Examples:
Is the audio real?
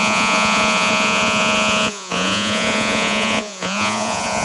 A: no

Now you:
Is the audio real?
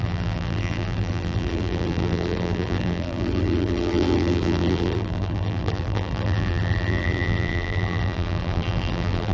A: no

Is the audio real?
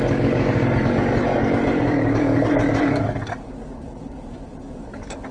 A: no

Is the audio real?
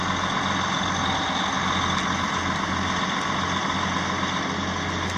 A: yes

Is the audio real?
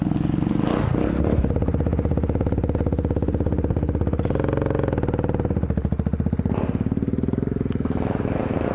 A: yes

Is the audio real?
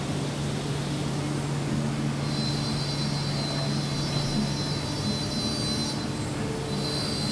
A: yes